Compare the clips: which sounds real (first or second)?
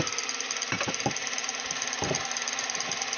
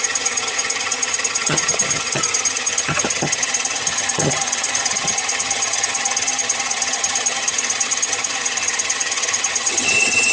first